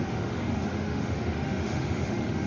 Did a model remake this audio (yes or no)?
yes